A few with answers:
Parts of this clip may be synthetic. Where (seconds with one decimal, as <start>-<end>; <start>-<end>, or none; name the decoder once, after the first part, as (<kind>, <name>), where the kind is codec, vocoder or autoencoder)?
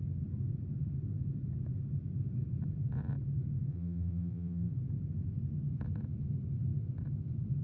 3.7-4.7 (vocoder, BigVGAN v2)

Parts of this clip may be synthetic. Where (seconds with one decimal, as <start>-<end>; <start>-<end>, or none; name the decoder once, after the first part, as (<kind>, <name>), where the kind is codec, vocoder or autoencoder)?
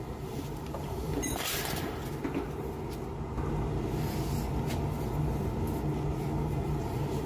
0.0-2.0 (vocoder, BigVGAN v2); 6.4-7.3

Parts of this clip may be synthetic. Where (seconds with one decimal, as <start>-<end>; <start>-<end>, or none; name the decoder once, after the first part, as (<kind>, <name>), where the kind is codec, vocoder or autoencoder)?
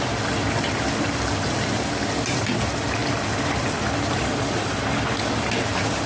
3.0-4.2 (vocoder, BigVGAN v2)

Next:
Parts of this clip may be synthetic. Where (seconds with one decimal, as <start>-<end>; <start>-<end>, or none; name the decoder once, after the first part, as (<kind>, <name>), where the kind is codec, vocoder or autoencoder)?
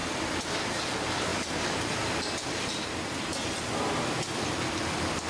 0.0-0.8 (vocoder, BigVGAN v2)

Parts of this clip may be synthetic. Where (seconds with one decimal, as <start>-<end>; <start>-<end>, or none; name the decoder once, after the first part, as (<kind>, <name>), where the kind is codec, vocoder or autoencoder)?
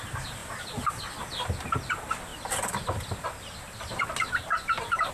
none